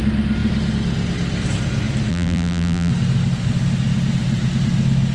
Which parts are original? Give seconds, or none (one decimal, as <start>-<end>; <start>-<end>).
0.0-2.1; 2.9-5.1

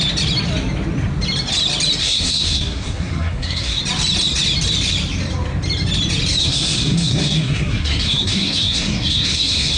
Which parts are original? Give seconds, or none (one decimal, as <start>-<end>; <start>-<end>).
0.0-2.0; 3.8-6.4

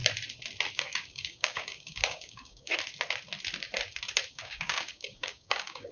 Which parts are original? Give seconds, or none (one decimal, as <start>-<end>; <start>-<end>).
0.0-0.7; 2.7-4.3

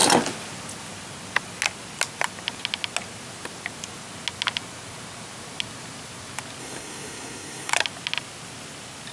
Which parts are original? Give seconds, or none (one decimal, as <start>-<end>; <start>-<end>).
0.0-6.6; 7.7-9.1

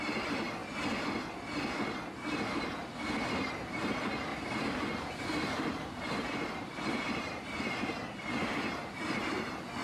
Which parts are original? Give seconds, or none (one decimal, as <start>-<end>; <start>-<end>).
0.0-4.3; 7.6-8.8

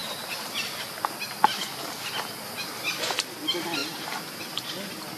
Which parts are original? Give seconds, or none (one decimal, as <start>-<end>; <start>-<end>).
0.0-5.2